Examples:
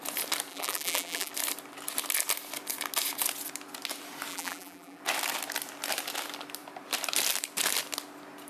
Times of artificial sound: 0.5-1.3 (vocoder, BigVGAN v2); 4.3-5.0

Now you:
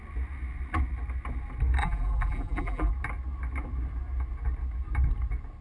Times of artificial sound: 1.8-2.9 (vocoder, BigVGAN v2)